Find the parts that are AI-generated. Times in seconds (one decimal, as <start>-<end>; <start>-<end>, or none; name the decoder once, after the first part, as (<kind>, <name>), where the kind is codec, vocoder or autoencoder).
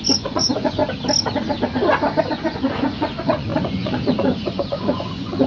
0.0-0.8 (vocoder, Vocos); 2.3-5.5